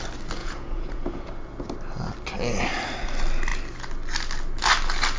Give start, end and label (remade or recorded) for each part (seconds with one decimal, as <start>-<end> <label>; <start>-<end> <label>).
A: 0.0-0.4 recorded; 0.4-1.3 remade; 1.3-5.2 recorded